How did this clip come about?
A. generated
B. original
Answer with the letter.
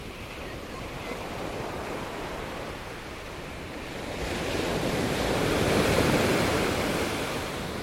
A